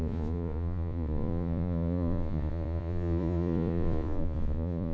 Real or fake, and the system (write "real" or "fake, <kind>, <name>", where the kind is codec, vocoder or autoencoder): fake, vocoder, Vocos